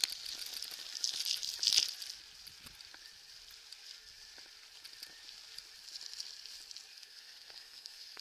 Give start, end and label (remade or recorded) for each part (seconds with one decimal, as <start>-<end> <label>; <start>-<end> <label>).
0.0-6.9 recorded; 6.9-8.2 remade